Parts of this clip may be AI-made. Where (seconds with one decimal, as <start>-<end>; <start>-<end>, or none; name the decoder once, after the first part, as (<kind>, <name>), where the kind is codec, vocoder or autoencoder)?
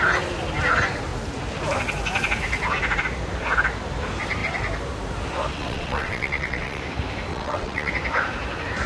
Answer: 5.5-6.8 (vocoder, WaveNeXt); 7.3-7.9